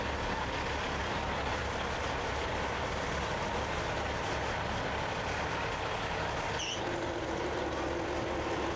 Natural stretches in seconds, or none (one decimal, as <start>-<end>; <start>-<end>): 0.0-1.6; 2.5-8.8